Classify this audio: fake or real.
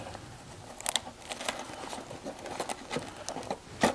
real